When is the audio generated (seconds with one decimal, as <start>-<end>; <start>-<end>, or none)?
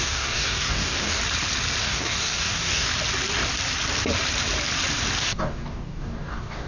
0.0-1.2; 1.8-2.9; 5.2-6.7